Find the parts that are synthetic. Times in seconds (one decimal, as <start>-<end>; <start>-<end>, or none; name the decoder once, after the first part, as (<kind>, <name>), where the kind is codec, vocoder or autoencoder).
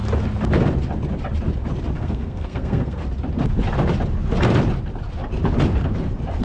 2.0-3.0 (codec, SNAC)